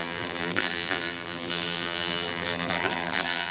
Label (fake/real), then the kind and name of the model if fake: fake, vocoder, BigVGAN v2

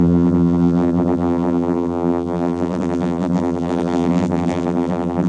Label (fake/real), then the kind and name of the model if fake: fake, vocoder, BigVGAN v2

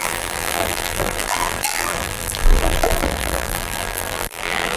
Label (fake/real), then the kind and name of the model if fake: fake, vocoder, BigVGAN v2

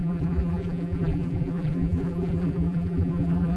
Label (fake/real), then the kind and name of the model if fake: fake, vocoder, BigVGAN v2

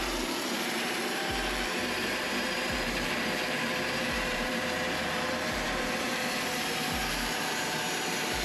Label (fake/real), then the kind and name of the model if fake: fake, vocoder, BigVGAN v2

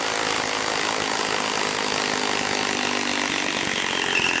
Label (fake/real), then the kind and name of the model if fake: real